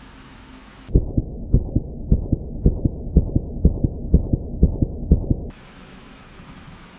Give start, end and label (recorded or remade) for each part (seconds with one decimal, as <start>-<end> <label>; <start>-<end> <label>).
0.0-2.1 remade; 2.1-2.8 recorded; 2.8-7.0 remade

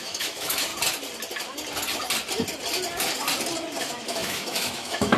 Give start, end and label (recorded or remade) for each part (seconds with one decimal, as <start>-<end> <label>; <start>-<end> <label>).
0.0-0.7 remade; 0.7-3.8 recorded; 3.8-5.2 remade